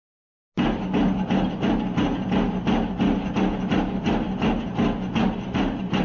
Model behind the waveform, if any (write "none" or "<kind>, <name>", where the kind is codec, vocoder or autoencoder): none